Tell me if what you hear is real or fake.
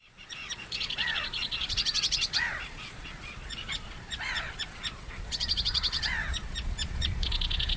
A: fake